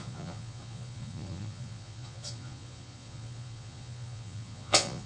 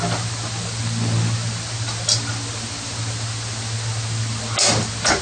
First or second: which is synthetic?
first